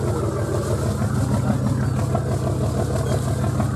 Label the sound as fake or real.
real